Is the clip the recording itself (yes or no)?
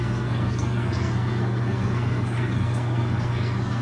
no